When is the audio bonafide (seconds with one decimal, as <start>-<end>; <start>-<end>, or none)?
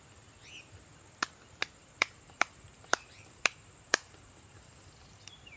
0.0-1.8